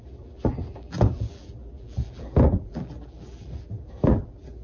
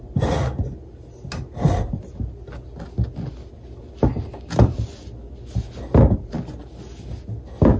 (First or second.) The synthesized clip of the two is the first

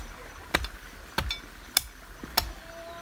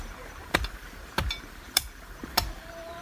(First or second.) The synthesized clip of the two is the second